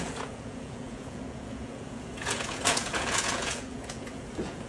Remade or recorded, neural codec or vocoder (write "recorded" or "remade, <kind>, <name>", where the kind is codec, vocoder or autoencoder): remade, vocoder, Vocos